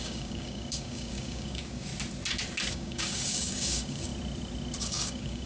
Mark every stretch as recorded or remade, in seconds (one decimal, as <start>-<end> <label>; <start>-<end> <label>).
0.0-1.9 remade; 1.9-2.7 recorded; 2.7-4.1 remade; 4.1-4.8 recorded; 4.8-5.5 remade